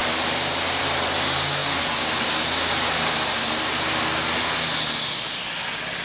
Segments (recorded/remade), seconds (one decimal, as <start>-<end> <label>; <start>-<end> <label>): 0.0-6.0 recorded